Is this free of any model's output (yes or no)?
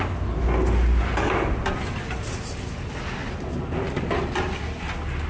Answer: yes